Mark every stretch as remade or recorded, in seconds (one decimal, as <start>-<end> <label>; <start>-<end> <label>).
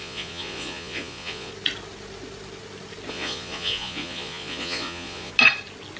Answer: 0.0-1.5 remade; 1.5-3.1 recorded; 3.1-5.3 remade; 5.3-6.0 recorded